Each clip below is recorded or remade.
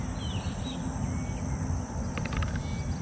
recorded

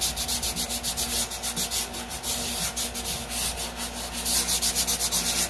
recorded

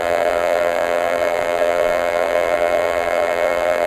remade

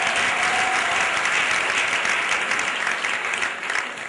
recorded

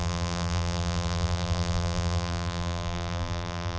remade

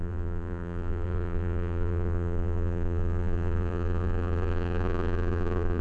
remade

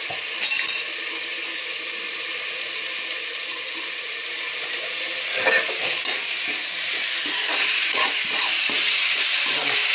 remade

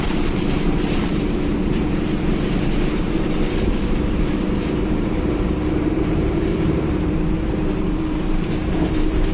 remade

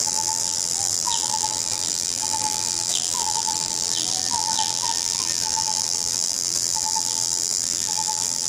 remade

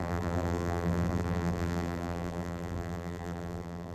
remade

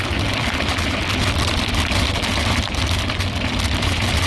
remade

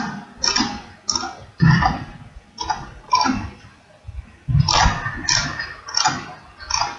recorded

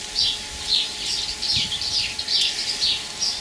remade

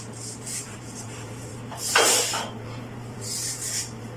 remade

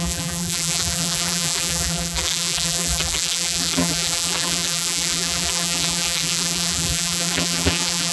remade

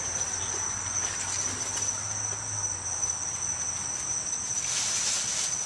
recorded